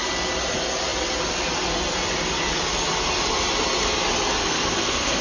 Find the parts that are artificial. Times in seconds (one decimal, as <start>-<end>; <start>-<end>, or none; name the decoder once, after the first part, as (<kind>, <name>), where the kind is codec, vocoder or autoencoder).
4.4-5.2 (codec, SNAC)